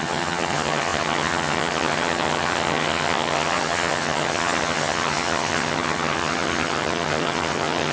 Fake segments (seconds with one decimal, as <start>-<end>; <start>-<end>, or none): 0.0-7.9